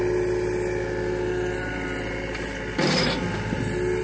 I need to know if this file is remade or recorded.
recorded